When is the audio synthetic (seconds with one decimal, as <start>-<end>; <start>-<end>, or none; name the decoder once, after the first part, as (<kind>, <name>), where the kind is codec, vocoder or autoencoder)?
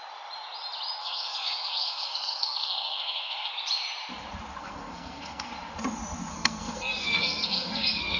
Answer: 1.0-3.5 (codec, SNAC); 4.6-5.5; 6.3-8.2